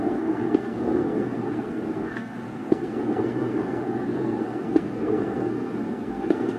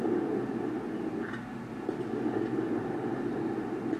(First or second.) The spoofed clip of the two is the first